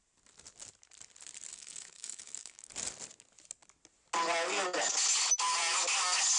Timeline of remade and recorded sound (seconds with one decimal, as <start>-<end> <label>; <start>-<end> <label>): 0.0-1.5 recorded; 1.5-2.7 remade; 2.7-6.4 recorded